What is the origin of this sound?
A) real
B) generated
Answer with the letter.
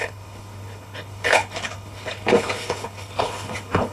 B